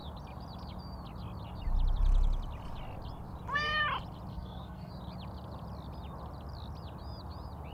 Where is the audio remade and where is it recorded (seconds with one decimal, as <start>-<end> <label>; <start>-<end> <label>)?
0.0-4.3 recorded; 4.3-4.9 remade; 4.9-7.7 recorded